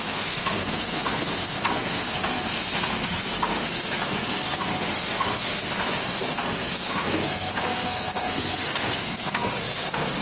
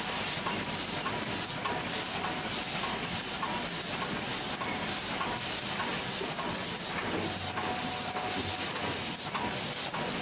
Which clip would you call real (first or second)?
second